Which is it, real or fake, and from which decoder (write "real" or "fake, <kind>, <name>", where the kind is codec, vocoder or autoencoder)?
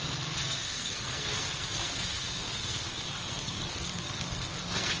fake, codec, SNAC